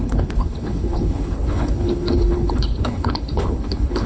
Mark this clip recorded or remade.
remade